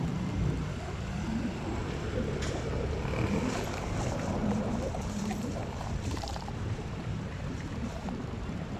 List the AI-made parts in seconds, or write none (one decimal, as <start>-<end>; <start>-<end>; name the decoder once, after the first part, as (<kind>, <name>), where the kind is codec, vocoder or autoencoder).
4.4-8.8 (vocoder, BigVGAN v2)